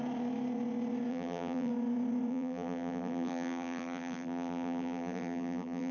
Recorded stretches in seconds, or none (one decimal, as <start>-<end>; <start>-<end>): 0.0-1.1; 1.7-2.3